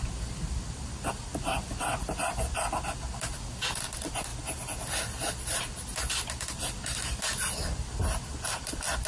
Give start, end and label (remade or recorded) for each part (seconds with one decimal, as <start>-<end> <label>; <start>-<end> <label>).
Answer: 0.0-9.1 recorded